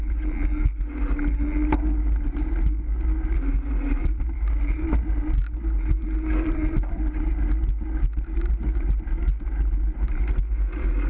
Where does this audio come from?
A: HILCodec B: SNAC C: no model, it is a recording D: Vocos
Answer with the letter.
C